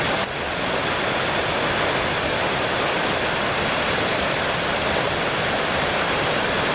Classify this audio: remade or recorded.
recorded